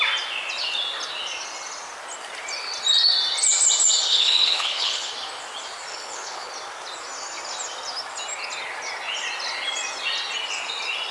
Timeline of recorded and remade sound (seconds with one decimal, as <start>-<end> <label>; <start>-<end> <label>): 0.0-4.1 recorded; 4.1-5.1 remade; 5.1-5.9 recorded; 5.9-6.5 remade; 6.5-11.1 recorded